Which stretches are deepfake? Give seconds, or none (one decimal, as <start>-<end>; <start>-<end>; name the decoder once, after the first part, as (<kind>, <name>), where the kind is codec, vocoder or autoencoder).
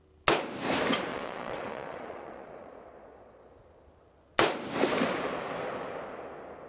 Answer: 1.1-3.5 (vocoder, Vocos)